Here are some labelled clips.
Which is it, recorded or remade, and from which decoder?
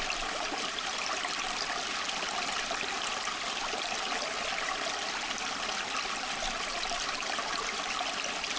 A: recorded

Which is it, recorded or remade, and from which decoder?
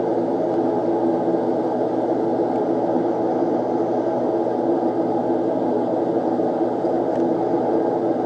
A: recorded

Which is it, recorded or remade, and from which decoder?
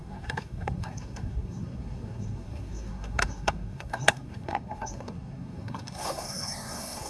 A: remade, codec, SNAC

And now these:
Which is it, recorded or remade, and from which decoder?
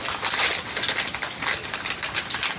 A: recorded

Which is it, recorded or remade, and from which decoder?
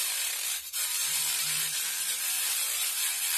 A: remade, vocoder, BigVGAN v2